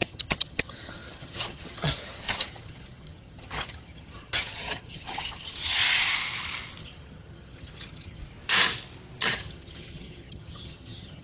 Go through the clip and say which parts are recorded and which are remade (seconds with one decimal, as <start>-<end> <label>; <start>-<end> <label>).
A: 0.0-5.8 remade; 5.8-6.8 recorded; 6.8-8.2 remade; 8.2-9.3 recorded; 9.3-11.2 remade

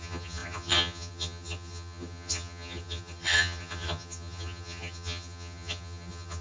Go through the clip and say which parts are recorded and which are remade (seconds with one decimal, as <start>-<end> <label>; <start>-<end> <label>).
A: 0.0-6.4 remade

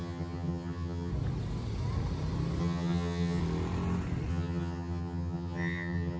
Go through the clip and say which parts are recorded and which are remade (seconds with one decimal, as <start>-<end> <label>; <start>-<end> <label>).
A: 0.0-1.1 remade; 1.1-2.6 recorded; 2.6-3.4 remade; 3.4-4.3 recorded; 4.3-6.2 remade

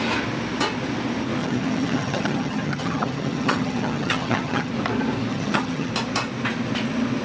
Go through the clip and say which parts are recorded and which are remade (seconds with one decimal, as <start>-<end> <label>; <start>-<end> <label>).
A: 0.0-1.4 recorded; 1.4-4.7 remade; 4.7-5.3 recorded; 5.3-5.9 remade; 5.9-7.2 recorded